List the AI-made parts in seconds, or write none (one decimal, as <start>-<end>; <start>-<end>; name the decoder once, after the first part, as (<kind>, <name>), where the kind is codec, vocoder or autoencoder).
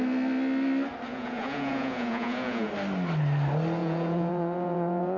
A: 1.1-2.7 (vocoder, Vocos); 3.8-5.2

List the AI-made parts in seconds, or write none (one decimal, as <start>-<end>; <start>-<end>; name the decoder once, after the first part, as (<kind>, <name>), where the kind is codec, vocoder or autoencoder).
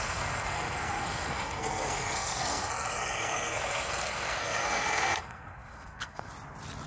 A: 0.0-6.3 (codec, SNAC)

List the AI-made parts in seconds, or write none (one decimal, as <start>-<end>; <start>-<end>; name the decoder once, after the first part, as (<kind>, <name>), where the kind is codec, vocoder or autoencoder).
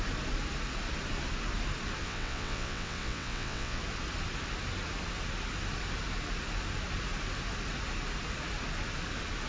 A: 2.0-3.8 (vocoder, WaveNeXt)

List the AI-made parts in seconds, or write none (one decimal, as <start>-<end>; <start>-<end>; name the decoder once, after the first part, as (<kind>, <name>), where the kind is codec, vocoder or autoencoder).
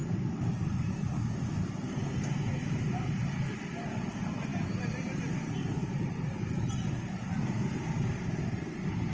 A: 2.4-9.1 (vocoder, BigVGAN v2)